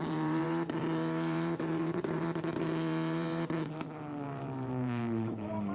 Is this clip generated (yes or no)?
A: yes